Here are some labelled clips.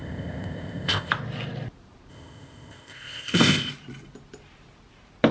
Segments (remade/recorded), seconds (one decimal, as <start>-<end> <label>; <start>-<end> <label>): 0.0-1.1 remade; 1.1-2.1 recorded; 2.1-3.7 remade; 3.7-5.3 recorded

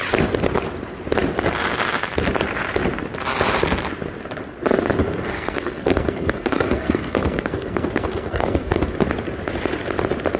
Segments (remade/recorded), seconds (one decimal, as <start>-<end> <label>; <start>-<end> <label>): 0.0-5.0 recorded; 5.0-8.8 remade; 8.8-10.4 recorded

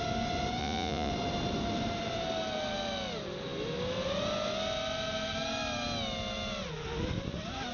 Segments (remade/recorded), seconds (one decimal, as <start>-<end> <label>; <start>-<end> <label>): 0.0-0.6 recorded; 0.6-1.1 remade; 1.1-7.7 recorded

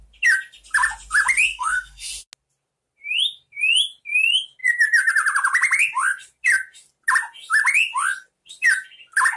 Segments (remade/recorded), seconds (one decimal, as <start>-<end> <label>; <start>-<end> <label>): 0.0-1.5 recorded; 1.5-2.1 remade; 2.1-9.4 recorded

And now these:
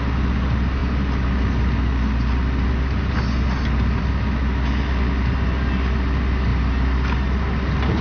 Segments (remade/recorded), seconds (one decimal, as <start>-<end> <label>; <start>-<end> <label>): 0.0-8.0 recorded

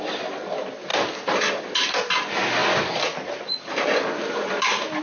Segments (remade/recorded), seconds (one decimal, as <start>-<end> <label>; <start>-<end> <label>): 0.0-5.0 recorded

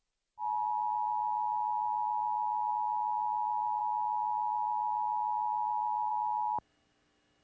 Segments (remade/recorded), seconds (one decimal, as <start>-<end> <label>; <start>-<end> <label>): 0.0-7.4 recorded

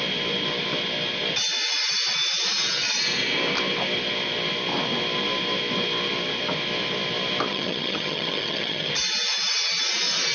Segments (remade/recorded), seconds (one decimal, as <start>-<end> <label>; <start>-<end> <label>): 0.0-7.5 recorded; 7.5-8.9 remade; 8.9-10.3 recorded